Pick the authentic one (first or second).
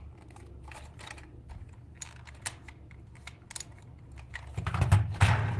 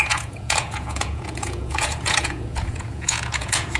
first